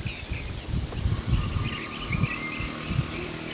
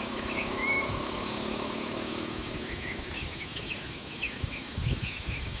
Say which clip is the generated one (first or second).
second